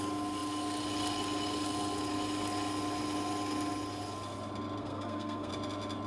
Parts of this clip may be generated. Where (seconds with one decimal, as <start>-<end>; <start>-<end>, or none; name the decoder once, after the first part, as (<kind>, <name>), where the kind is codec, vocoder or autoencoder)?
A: 4.8-5.5 (codec, SNAC)